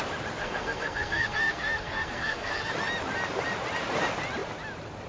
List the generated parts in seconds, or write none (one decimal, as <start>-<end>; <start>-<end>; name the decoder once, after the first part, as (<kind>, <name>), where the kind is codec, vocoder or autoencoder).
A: 0.4-2.7 (codec, SNAC)